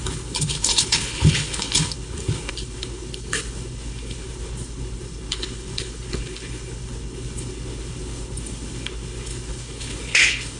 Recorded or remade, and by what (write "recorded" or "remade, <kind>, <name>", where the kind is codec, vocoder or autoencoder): remade, codec, HILCodec